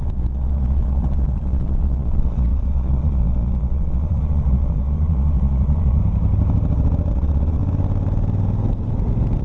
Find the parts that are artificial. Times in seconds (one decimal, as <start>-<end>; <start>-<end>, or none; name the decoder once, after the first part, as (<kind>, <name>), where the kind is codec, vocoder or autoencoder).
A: 0.0-6.0 (vocoder, Vocos); 7.1-7.6